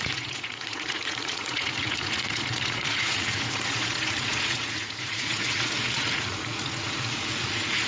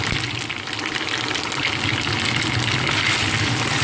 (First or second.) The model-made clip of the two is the first